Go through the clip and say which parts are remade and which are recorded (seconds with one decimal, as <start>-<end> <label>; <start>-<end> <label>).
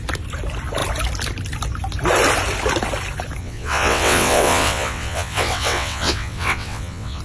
0.0-3.4 recorded; 3.4-7.2 remade